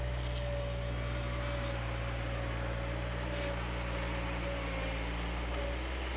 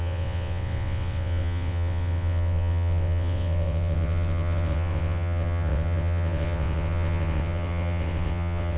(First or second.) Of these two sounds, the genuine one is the first